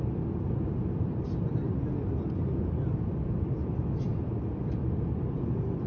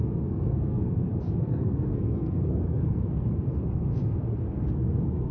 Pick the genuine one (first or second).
first